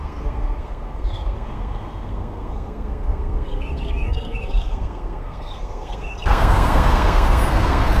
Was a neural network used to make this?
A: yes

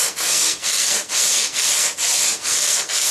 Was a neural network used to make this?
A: yes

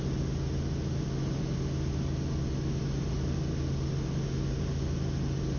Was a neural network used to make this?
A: no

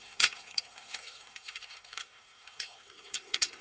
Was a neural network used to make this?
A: yes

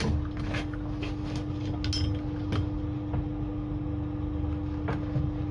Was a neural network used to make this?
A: no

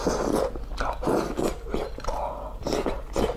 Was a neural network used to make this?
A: no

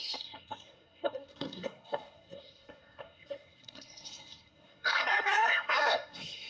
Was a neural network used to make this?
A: yes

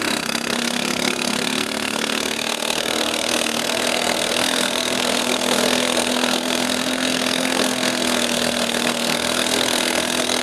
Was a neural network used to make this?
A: yes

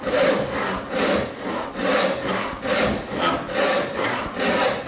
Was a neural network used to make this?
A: no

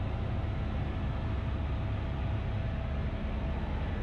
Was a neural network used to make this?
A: no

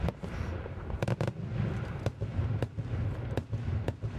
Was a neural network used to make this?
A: no